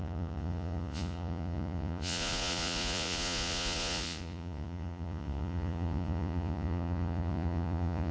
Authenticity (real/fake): fake